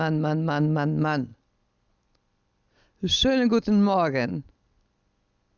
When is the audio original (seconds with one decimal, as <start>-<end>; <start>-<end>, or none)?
0.0-5.6